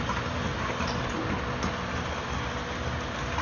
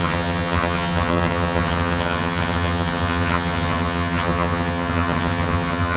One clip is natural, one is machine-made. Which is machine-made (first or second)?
second